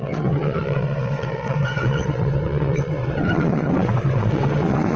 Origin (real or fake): fake